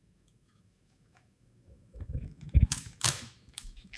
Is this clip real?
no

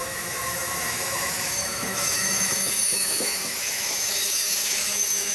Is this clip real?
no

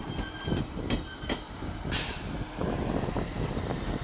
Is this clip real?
yes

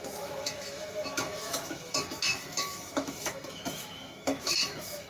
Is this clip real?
no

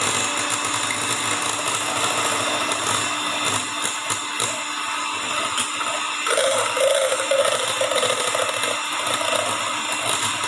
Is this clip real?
yes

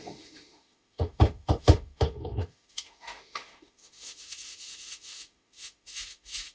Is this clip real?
no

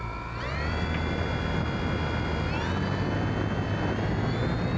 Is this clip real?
yes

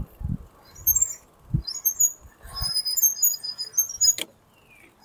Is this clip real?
yes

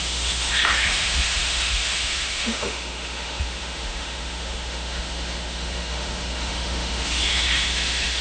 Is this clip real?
no